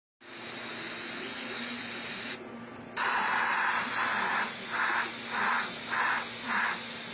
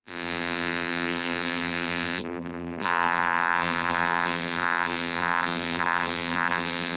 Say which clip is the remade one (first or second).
second